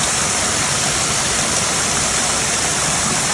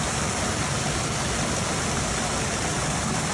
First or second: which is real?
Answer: second